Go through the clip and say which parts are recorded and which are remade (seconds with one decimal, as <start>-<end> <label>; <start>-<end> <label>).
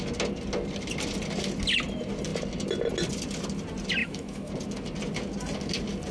0.0-4.0 recorded; 4.0-4.5 remade; 4.5-6.1 recorded